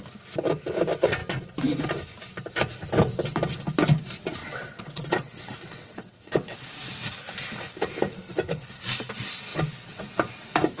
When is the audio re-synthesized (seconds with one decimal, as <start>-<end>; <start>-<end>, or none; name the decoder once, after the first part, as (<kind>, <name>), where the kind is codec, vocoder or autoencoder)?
4.4-6.7 (vocoder, WaveNeXt)

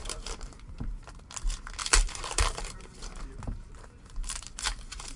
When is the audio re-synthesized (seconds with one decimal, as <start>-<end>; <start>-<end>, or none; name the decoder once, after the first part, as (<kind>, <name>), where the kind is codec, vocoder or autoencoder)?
0.0-0.9 (vocoder, BigVGAN v2); 1.8-5.2

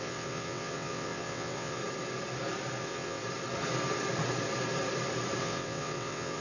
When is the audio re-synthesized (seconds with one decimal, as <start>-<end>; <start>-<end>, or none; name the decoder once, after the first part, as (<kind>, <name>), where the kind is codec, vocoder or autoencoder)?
0.0-1.8 (vocoder, WaveNeXt); 2.8-3.2; 5.4-6.4

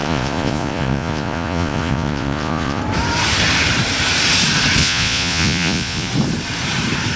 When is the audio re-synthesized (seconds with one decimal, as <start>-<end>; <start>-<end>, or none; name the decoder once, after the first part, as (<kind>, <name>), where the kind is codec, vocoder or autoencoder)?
0.0-2.8 (vocoder, Vocos); 4.8-6.1

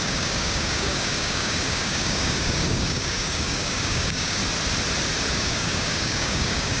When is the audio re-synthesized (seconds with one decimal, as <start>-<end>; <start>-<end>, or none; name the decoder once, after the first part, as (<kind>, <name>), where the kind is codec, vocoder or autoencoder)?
0.0-4.4 (codec, DAC); 5.3-6.8

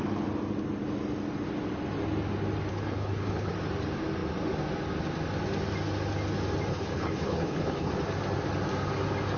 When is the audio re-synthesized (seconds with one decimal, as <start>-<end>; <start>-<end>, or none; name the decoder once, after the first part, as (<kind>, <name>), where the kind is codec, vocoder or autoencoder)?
2.7-3.5 (codec, HILCodec); 6.7-7.9

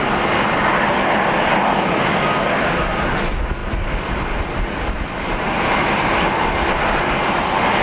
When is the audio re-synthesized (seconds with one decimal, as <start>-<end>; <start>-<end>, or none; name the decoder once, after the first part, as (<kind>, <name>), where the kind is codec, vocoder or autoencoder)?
none

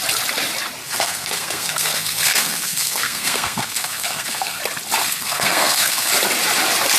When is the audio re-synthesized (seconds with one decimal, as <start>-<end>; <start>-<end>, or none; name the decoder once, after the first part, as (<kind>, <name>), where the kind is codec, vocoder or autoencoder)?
0.8-4.6 (codec, SNAC); 5.0-6.1